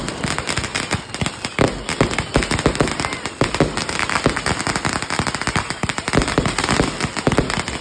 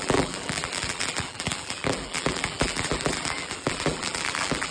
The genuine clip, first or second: first